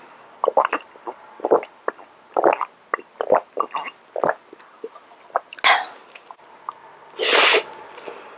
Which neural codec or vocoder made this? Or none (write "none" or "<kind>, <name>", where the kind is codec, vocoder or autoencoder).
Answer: none